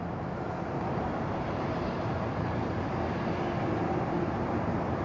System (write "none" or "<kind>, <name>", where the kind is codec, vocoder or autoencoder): vocoder, BigVGAN v2